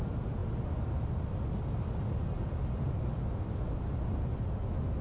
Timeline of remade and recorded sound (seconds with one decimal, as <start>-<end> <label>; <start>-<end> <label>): 0.0-5.0 recorded